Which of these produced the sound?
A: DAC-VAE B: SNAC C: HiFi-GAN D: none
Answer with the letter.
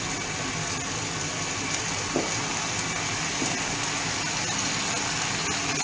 D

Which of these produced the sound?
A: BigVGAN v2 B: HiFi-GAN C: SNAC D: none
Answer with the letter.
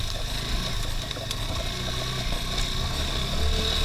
D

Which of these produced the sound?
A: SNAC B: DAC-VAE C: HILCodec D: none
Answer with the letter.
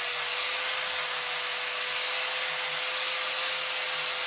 D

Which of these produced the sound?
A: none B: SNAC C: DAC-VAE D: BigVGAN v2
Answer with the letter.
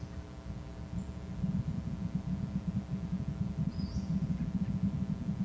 A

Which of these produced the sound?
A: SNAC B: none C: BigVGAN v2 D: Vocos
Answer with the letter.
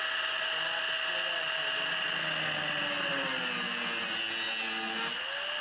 B